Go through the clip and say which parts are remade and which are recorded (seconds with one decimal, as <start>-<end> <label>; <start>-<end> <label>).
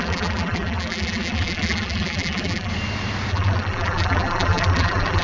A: 0.0-2.7 remade; 2.7-3.3 recorded; 3.3-5.2 remade